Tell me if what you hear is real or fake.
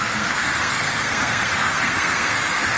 fake